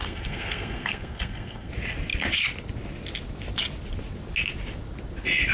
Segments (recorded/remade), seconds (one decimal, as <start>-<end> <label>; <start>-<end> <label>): 0.0-1.7 remade; 1.7-5.5 recorded